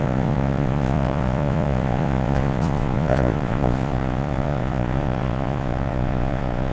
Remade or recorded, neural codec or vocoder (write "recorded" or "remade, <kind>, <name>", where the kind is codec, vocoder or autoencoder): remade, vocoder, Vocos